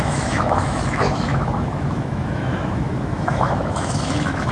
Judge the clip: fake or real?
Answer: fake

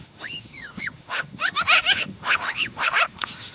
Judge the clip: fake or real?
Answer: fake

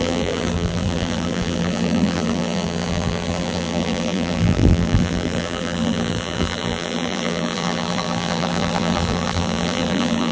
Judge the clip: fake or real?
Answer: fake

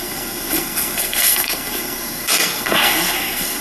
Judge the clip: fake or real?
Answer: fake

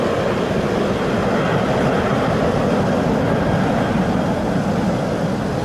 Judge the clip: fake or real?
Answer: real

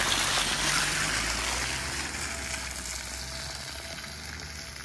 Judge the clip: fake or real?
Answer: real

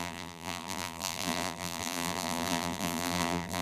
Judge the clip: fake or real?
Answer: fake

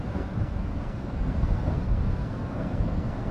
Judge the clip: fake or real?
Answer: fake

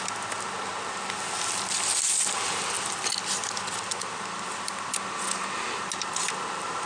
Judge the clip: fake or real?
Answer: real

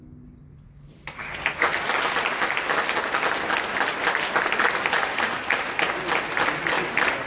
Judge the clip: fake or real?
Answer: real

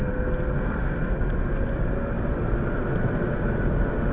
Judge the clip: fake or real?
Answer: real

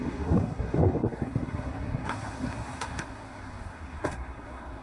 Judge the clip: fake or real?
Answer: fake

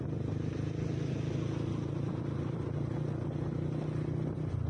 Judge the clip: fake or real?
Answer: real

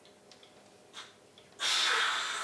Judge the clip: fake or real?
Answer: real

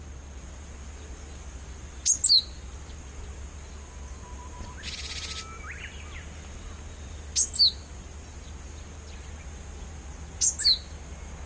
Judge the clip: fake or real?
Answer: real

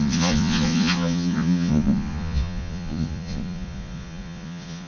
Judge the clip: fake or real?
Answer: fake